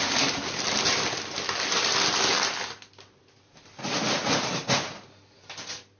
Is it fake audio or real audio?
real